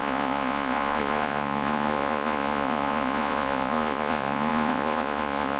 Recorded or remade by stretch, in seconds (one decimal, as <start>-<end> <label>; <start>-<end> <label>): 0.0-5.6 remade